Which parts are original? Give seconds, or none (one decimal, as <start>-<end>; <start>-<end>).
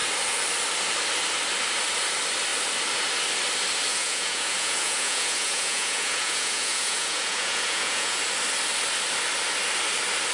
0.0-3.9; 8.2-10.3